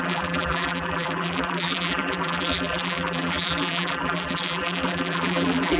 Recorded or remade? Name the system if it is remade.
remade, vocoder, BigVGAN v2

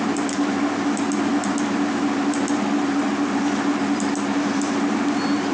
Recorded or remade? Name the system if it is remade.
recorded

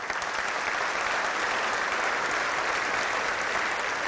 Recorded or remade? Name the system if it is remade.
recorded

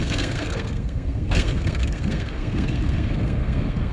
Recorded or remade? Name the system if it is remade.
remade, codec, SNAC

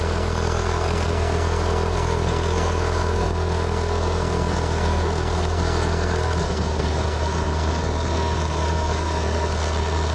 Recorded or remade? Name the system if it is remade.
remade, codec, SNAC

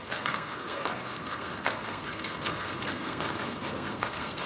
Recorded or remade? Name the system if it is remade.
remade, codec, SNAC